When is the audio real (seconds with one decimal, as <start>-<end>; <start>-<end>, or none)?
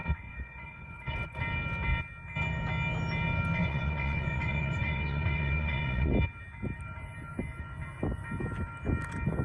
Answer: 1.4-3.6; 6.1-9.4